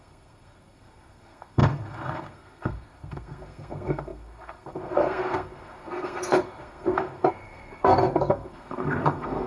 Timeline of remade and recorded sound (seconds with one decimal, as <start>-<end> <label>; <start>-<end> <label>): 0.0-9.5 remade